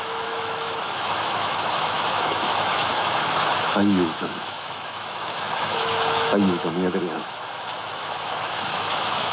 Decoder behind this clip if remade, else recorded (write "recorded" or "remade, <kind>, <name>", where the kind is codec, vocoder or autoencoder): remade, autoencoder, DAC-VAE